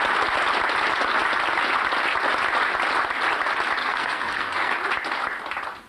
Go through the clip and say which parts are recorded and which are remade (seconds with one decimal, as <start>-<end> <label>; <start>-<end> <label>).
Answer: 0.0-3.8 recorded; 3.8-4.7 remade; 4.7-5.9 recorded